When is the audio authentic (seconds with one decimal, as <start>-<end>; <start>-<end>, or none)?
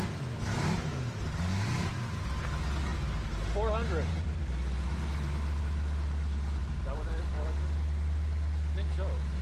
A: 0.0-6.6; 7.2-9.4